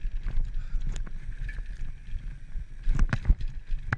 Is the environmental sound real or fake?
real